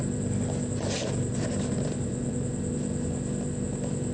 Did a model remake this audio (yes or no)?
no